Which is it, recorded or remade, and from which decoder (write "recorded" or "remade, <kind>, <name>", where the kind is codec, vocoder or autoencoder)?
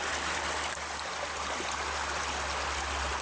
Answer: recorded